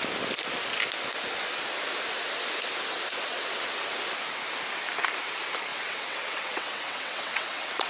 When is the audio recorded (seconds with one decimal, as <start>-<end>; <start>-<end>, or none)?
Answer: 0.0-5.7

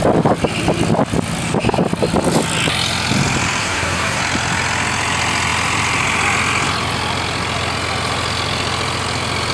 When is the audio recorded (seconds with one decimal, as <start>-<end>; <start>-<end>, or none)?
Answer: 0.0-3.6; 4.2-9.5

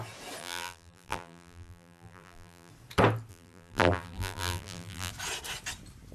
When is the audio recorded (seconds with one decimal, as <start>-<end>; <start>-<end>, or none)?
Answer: 0.0-0.4; 2.7-3.3; 5.1-6.1

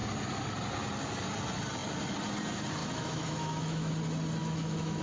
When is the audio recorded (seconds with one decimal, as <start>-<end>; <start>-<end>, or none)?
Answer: 0.0-2.8; 3.9-4.4

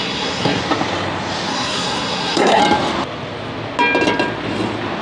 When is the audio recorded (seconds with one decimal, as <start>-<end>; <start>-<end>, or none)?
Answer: 0.6-1.5; 2.6-5.0

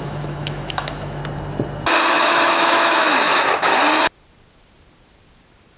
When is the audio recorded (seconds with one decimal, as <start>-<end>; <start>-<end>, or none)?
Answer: 1.2-2.1; 3.7-5.8